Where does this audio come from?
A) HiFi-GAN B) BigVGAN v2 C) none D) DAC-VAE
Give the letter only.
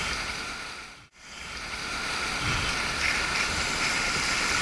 C